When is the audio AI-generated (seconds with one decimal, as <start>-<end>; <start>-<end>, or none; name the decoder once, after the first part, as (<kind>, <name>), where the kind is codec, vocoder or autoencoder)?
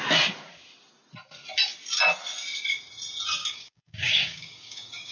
3.4-5.1 (codec, DAC)